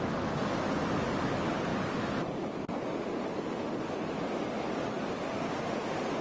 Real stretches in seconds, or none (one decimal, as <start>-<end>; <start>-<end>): 0.0-6.2